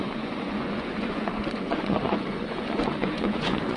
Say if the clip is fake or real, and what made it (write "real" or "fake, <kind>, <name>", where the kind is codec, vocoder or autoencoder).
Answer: fake, vocoder, Vocos